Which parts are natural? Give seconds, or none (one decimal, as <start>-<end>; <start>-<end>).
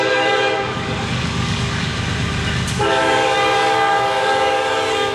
1.9-2.7